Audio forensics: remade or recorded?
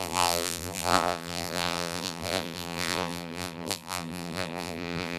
remade